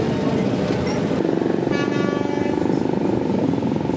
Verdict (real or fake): real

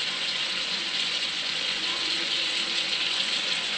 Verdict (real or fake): fake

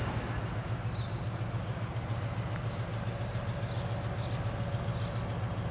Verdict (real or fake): real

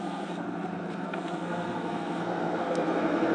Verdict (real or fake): fake